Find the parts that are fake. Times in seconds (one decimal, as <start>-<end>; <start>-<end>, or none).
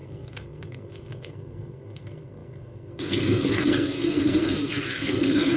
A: 0.0-5.6